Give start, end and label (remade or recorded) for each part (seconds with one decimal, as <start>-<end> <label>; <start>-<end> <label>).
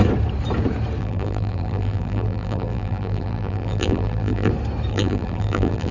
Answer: 0.0-1.0 recorded; 1.0-4.5 remade; 4.5-4.9 recorded; 4.9-5.9 remade